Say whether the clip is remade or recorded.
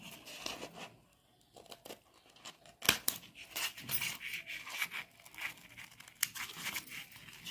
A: recorded